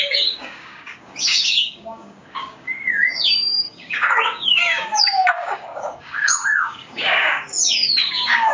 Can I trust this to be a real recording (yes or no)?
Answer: no